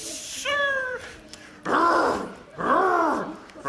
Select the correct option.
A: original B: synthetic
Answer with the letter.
B